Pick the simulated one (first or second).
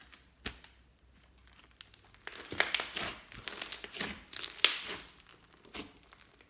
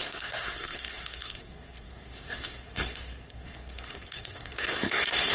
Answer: second